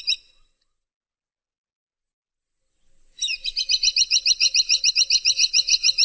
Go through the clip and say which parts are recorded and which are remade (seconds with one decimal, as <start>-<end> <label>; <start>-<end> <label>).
0.0-6.0 recorded